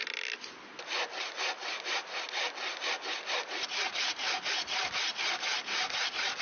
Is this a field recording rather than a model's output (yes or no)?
yes